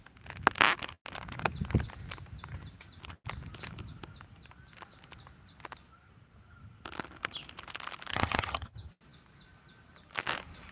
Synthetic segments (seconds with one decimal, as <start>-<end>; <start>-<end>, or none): 8.1-8.9